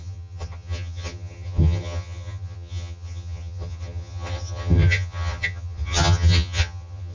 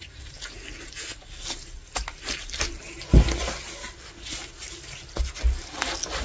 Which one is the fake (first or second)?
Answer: first